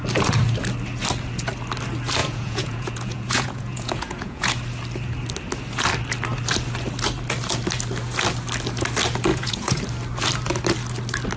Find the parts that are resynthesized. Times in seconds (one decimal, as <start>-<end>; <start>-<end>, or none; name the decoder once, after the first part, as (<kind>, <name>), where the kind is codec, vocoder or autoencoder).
2.2-4.5 (vocoder, Vocos); 9.3-9.8